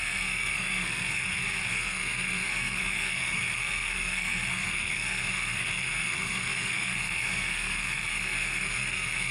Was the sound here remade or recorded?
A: remade